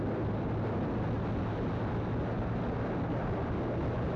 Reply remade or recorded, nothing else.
recorded